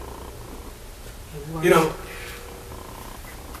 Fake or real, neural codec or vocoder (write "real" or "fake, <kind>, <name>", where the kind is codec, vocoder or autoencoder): real